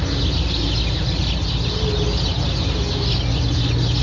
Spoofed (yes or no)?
no